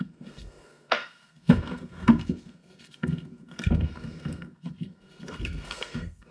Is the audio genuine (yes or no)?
no